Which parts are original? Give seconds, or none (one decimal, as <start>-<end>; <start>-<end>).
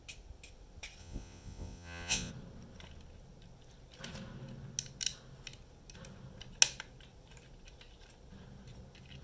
0.0-1.0; 2.3-9.2